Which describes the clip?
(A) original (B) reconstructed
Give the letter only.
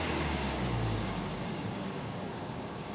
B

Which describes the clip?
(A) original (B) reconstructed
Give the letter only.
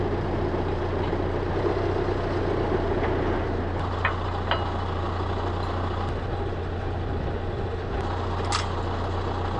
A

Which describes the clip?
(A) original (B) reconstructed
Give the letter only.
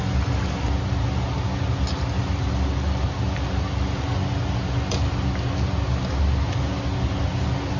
A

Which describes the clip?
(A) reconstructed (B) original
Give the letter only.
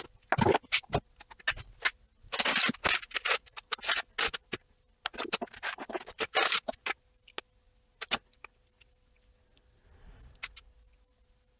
B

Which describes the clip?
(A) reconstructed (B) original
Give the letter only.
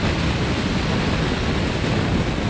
B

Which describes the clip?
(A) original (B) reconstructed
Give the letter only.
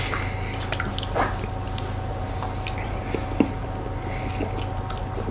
A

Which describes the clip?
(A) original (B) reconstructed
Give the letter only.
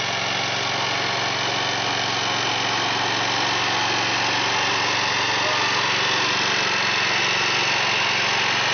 A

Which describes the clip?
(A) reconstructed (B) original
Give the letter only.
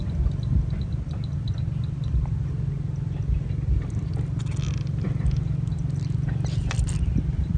B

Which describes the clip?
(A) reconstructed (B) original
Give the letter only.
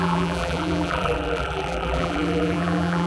A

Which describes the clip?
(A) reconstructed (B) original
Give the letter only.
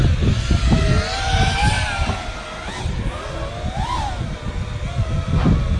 B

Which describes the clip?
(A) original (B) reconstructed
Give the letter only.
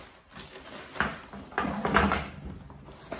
A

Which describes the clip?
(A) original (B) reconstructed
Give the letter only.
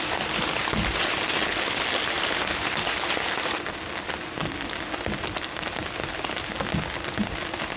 A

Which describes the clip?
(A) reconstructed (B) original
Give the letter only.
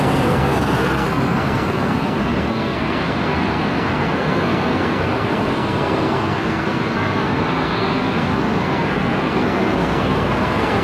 A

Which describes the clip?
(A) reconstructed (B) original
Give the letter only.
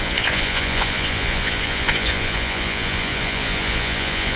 A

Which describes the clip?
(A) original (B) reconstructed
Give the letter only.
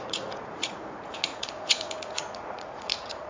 B